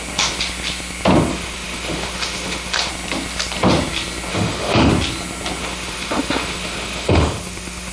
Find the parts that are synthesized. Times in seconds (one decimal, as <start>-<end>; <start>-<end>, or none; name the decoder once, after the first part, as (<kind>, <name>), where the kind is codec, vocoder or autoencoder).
1.3-2.9 (autoencoder, DAC-VAE); 4.3-4.9; 5.6-7.9